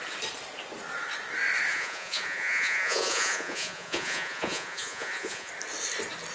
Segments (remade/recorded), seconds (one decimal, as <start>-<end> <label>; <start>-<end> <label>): 0.0-1.7 recorded; 1.7-5.5 remade; 5.5-6.3 recorded